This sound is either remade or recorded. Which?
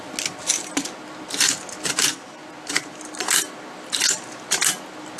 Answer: recorded